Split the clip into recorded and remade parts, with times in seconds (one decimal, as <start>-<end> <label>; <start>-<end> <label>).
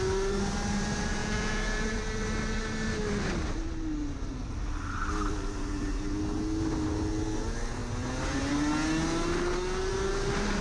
0.0-1.2 recorded; 1.2-2.0 remade; 2.0-10.6 recorded